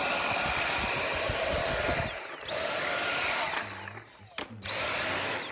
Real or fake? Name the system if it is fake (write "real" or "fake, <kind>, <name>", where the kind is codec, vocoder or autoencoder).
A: real